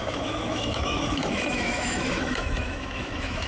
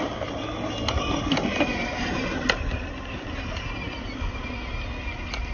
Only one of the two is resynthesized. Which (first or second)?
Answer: first